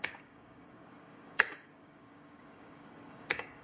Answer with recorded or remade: remade